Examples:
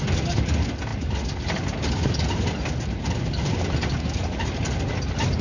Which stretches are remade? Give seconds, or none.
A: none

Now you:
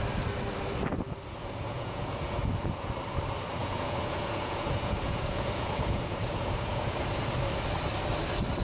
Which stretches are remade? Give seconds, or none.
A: 1.4-2.9 (vocoder, Vocos); 3.6-7.1

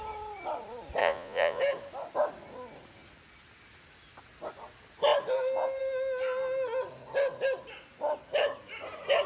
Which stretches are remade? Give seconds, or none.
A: 1.0-1.6 (vocoder, Vocos)

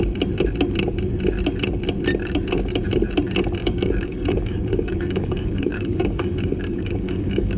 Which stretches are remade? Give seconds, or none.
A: 3.6-7.6 (codec, DAC)